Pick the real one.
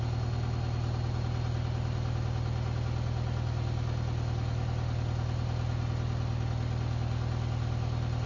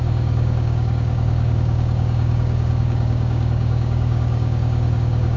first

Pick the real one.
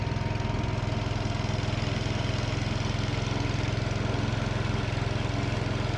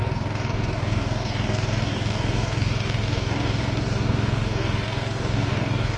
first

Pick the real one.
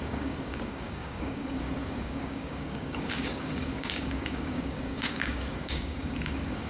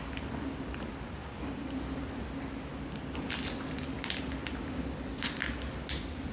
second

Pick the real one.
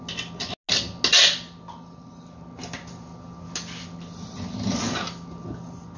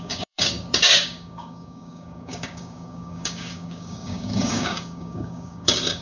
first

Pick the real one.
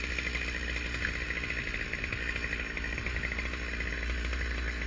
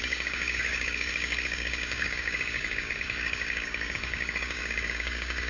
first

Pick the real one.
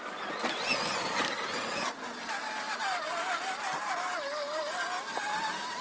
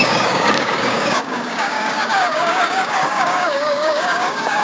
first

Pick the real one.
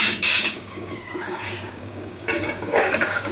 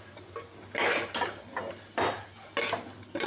second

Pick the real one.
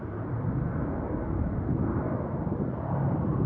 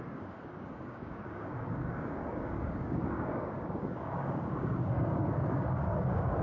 first